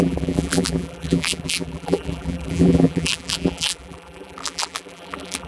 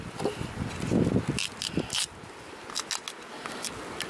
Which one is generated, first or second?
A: first